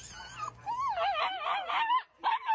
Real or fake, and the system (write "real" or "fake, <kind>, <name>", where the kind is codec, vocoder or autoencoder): real